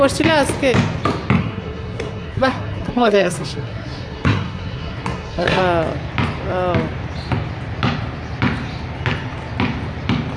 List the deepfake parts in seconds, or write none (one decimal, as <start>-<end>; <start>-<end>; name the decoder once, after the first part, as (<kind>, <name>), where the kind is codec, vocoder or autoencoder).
1.4-5.6 (codec, SNAC)